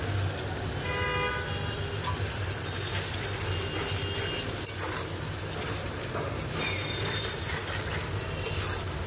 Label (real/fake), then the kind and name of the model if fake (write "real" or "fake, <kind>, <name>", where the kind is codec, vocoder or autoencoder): real